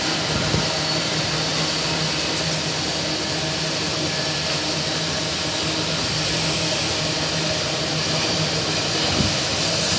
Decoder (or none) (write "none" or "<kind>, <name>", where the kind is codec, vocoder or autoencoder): none